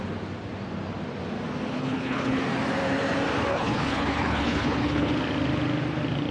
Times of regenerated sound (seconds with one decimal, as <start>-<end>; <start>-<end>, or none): 1.7-2.4; 3.5-5.1